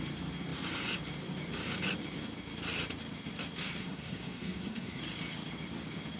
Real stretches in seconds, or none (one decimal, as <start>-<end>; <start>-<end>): 0.0-3.8; 5.0-6.2